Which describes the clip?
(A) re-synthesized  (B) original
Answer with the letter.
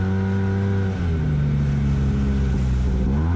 B